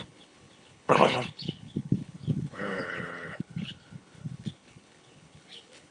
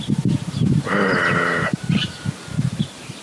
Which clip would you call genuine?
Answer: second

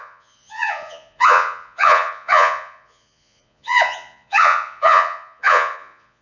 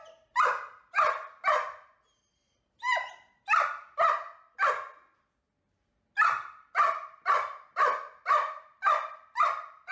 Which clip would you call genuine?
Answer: second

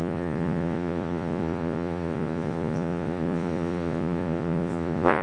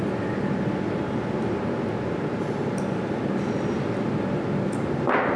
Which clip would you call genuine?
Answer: second